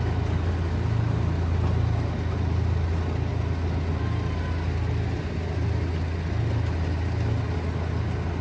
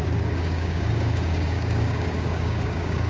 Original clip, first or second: first